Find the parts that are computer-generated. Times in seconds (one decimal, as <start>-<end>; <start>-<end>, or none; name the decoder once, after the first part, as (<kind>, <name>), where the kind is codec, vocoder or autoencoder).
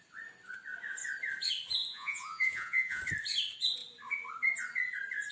1.9-3.0 (vocoder, Vocos)